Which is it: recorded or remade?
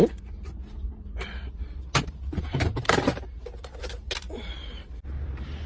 remade